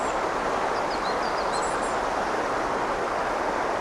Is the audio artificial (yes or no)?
no